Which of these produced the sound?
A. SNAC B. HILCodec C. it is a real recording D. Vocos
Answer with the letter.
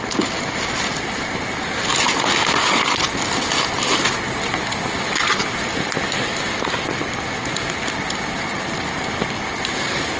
C